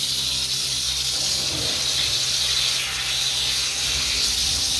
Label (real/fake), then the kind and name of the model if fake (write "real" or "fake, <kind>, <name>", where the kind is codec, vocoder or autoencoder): real